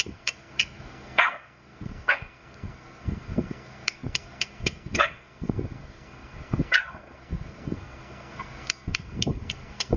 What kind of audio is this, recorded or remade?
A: remade